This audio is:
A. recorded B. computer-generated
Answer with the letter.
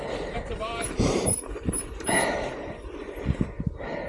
B